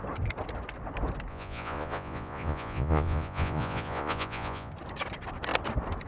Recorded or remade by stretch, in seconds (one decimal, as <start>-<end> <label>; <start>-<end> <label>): 0.0-1.3 recorded; 1.3-4.7 remade; 4.7-6.1 recorded

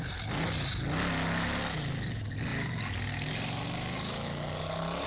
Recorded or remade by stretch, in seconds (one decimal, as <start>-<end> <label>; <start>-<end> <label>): 0.0-5.1 recorded

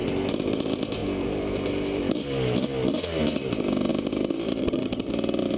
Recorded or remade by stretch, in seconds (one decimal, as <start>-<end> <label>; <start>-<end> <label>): 0.0-4.6 recorded; 4.6-5.1 remade; 5.1-5.6 recorded

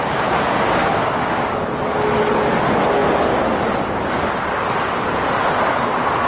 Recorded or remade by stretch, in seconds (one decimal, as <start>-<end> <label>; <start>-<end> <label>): 0.0-0.8 recorded; 0.8-1.8 remade; 1.8-6.3 recorded

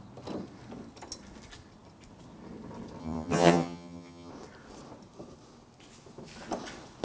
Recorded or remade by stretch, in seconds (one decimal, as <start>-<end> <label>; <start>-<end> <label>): 0.0-3.0 recorded; 3.0-4.3 remade; 4.3-7.0 recorded

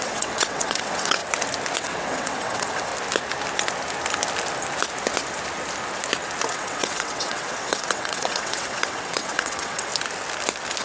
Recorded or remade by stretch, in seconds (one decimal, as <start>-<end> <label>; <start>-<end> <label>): 0.0-1.2 remade; 1.2-1.8 recorded; 1.8-2.9 remade; 2.9-6.5 recorded; 6.5-9.9 remade; 9.9-10.8 recorded

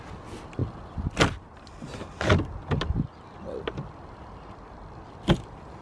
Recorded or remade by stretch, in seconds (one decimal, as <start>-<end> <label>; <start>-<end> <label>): 0.0-5.8 recorded